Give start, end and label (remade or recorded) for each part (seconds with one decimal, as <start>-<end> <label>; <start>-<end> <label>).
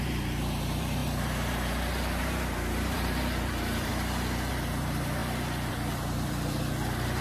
0.0-3.9 remade; 3.9-4.5 recorded; 4.5-5.2 remade; 5.2-5.7 recorded; 5.7-7.2 remade